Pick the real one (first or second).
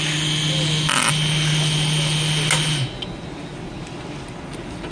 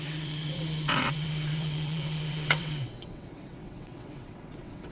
first